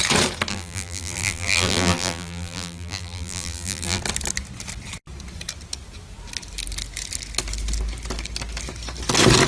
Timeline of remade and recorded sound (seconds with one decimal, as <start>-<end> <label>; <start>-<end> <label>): 0.0-0.5 recorded; 0.5-4.0 remade; 4.0-9.5 recorded

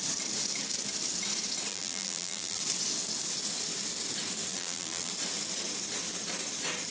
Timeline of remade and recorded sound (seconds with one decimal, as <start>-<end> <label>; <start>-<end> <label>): 0.0-1.7 recorded; 1.7-2.6 remade; 2.6-4.5 recorded; 4.5-5.1 remade; 5.1-6.9 recorded

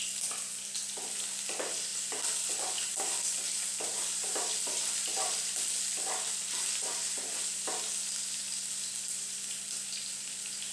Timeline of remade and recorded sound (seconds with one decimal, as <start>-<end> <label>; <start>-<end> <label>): 0.0-1.9 recorded; 1.9-6.8 remade; 6.8-10.7 recorded

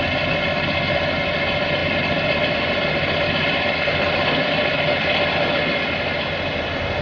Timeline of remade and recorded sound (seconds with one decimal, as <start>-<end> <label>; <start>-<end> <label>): 0.0-1.8 recorded; 1.8-4.8 remade; 4.8-7.0 recorded

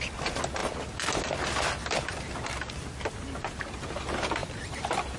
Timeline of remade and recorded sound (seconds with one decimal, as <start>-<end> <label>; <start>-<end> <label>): 0.0-0.6 recorded; 0.6-3.6 remade; 3.6-4.4 recorded; 4.4-5.2 remade